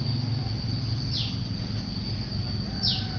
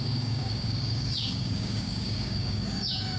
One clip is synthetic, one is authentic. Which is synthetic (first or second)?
second